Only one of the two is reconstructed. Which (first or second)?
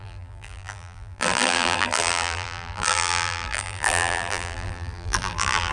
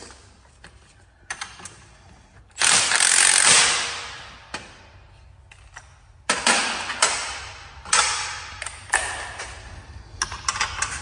first